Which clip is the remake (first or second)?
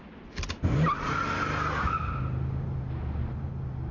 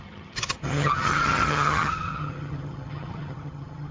second